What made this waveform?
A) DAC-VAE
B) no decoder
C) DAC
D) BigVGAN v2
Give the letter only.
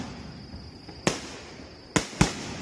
B